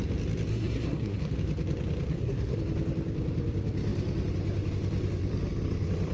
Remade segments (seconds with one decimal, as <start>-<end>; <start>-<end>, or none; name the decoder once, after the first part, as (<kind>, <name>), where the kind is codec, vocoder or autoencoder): 0.5-1.3 (codec, SNAC); 2.1-2.6